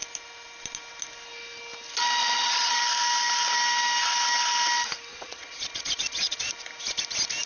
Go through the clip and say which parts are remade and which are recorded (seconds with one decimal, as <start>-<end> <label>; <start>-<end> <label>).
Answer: 0.0-2.2 recorded; 2.2-2.8 remade; 2.8-5.1 recorded; 5.1-6.5 remade; 6.5-7.5 recorded